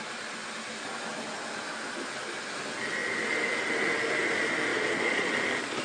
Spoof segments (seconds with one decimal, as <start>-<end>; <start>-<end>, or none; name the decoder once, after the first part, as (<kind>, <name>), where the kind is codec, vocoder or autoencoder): 4.7-5.3 (vocoder, Vocos)